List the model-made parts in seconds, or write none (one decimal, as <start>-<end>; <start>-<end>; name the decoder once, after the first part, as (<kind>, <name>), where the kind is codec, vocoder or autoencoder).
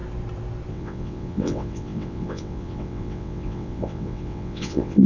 0.7-5.1 (vocoder, WaveNeXt)